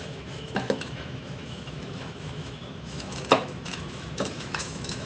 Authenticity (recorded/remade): remade